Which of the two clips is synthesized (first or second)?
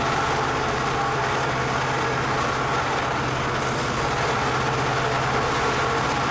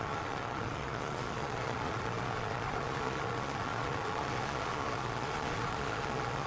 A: second